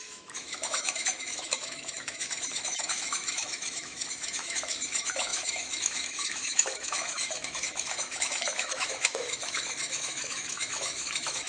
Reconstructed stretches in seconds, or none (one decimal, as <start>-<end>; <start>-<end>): 0.0-11.5

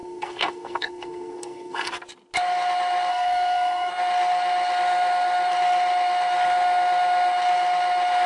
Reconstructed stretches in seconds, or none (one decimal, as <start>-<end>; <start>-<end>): 0.0-1.9; 3.1-3.9

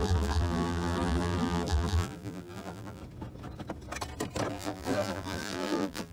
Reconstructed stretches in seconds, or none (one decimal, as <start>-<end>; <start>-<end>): 0.0-3.0; 4.5-6.1

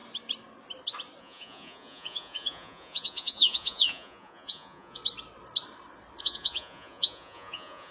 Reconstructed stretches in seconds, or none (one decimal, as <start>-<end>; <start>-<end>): 1.2-5.0; 6.2-7.9

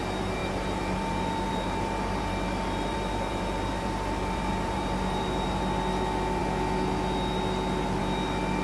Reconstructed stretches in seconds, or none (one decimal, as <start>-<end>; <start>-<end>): 0.4-5.6

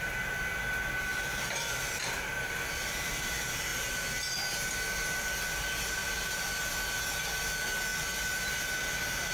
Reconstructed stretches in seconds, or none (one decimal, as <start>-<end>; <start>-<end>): 1.1-3.2; 6.0-6.6; 7.9-8.6

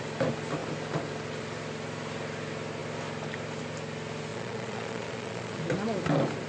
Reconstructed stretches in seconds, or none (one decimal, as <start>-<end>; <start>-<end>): 4.3-5.6

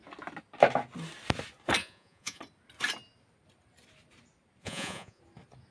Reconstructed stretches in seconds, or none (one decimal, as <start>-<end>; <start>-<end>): 1.8-2.4; 4.6-5.2